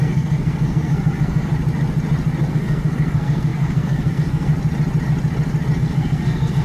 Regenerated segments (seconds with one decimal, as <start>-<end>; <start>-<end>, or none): 0.0-1.5; 2.5-4.5; 5.8-6.6